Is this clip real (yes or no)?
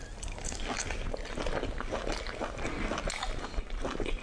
yes